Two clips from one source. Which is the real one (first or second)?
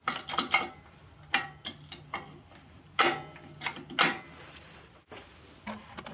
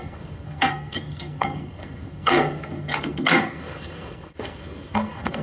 first